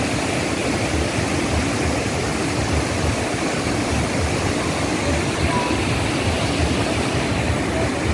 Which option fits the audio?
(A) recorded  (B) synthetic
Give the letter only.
A